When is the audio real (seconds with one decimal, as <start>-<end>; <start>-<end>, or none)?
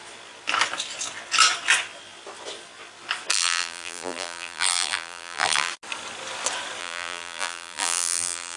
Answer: 0.0-3.3; 5.7-6.8